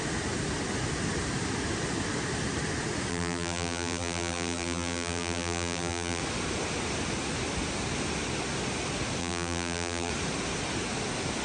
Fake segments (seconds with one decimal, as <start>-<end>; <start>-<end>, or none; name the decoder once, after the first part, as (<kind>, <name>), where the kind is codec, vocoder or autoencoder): 3.1-6.2 (vocoder, BigVGAN v2); 9.2-10.1